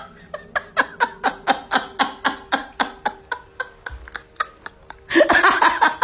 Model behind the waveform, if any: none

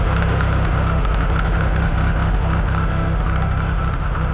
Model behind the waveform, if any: autoencoder, DAC-VAE